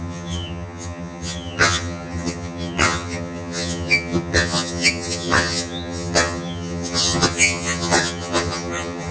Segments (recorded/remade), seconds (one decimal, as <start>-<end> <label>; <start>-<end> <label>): 0.0-9.1 remade